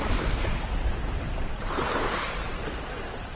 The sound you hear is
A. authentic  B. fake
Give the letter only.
A